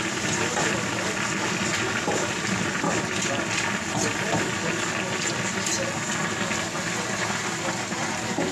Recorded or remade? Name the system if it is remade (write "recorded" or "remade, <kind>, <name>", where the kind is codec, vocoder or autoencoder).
recorded